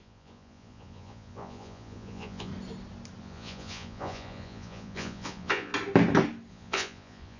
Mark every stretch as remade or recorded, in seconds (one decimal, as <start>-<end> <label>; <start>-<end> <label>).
0.0-2.5 remade; 2.5-3.2 recorded; 3.2-5.7 remade; 5.7-6.5 recorded; 6.5-7.4 remade